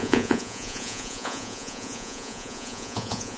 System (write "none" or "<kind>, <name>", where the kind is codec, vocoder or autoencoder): vocoder, Vocos